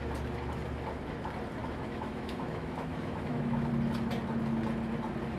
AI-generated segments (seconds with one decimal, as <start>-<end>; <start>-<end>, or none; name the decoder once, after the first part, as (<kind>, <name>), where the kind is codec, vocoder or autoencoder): 1.6-3.7 (autoencoder, DAC-VAE)